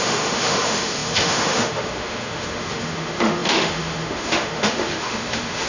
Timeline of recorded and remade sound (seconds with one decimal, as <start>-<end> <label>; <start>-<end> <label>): 0.0-5.7 remade